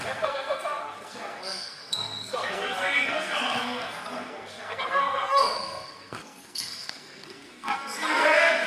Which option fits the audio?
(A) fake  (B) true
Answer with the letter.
A